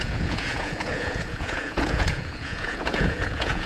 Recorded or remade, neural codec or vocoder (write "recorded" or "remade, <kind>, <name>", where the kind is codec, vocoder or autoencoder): remade, vocoder, Vocos